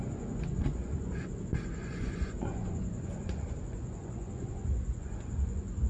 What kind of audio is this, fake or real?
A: fake